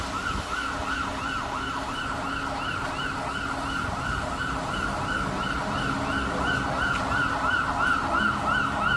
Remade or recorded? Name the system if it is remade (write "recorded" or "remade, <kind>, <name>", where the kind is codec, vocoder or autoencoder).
recorded